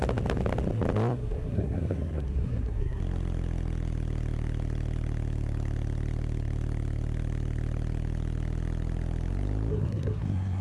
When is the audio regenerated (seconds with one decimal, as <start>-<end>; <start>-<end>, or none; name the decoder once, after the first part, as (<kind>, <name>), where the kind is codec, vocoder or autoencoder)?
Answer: 1.1-3.0 (codec, SNAC); 9.7-10.6